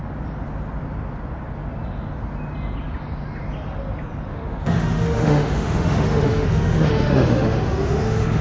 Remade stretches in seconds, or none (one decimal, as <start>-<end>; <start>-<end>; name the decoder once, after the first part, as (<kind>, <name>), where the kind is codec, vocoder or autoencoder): 4.3-8.4 (autoencoder, DAC-VAE)